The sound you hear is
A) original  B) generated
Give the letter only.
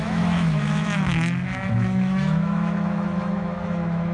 B